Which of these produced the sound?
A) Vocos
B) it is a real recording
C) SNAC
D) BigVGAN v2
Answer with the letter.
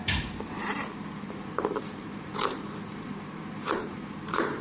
D